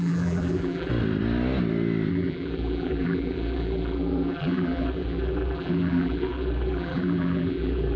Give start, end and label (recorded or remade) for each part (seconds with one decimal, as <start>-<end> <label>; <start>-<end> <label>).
0.0-0.9 remade; 0.9-2.1 recorded; 2.1-8.0 remade